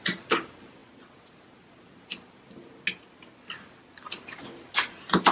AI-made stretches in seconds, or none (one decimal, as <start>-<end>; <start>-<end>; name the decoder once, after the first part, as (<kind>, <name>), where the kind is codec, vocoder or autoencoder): none